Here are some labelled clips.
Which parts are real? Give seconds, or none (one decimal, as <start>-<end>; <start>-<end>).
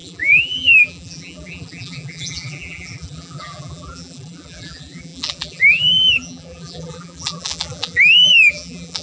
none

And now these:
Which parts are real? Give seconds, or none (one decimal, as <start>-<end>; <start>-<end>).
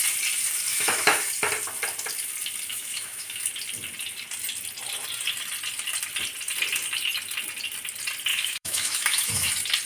0.0-0.7; 1.3-2.7; 3.4-8.3; 9.5-9.9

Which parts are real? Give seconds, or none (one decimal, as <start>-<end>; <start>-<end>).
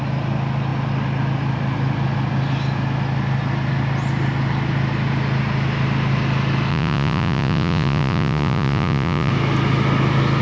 0.0-6.7; 9.3-10.4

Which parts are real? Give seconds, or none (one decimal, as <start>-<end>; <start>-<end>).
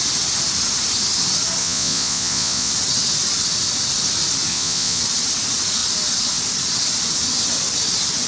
0.0-1.6; 2.7-4.5; 5.0-8.3